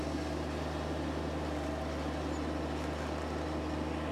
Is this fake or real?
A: real